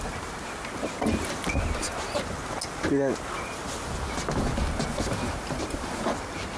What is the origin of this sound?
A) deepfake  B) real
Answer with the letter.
B